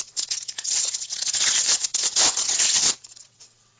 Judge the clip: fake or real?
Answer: fake